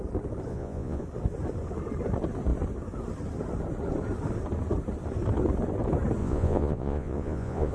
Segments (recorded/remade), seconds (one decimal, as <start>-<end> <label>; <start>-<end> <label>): 0.0-0.5 recorded; 0.5-1.0 remade; 1.0-6.2 recorded; 6.2-7.7 remade